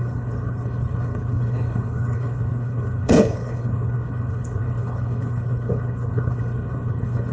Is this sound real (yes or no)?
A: no